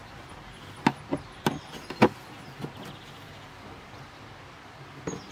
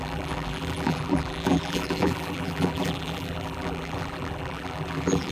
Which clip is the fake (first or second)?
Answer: second